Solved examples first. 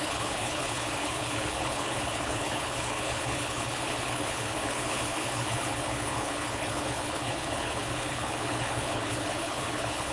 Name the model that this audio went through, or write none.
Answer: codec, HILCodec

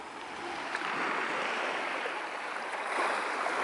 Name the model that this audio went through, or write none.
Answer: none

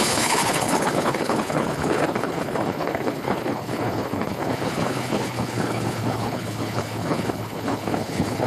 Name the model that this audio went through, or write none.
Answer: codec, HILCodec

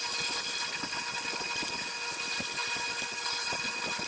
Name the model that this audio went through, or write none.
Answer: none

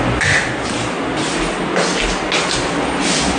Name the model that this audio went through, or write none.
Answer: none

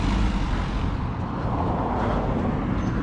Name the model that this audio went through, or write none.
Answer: none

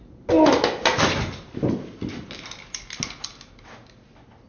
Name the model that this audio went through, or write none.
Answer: none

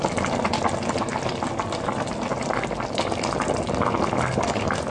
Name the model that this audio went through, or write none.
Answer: none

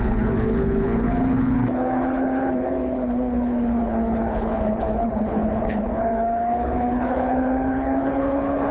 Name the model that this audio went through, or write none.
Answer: codec, HILCodec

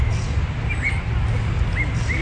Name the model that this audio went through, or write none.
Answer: none